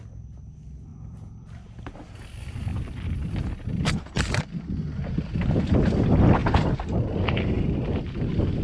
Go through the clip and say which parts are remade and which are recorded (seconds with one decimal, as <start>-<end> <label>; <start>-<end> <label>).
0.0-0.9 recorded; 0.9-2.1 remade; 2.1-2.7 recorded; 2.7-4.4 remade; 4.4-8.6 recorded